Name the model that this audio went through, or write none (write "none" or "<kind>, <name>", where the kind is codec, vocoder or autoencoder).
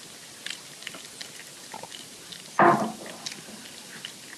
none